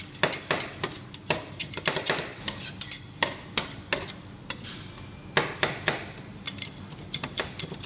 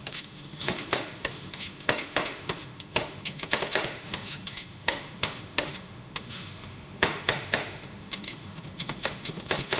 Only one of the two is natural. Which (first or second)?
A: first